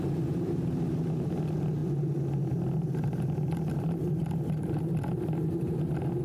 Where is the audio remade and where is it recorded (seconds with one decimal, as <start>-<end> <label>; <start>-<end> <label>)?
0.0-6.2 recorded